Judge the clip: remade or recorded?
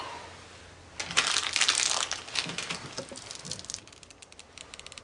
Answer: recorded